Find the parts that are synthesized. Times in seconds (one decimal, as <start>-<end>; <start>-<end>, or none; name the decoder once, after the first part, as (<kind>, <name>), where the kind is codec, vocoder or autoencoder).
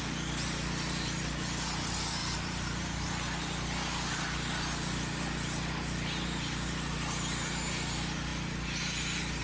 none